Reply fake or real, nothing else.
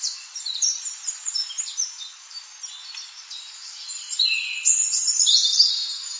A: fake